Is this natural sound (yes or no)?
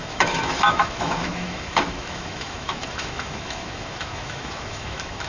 no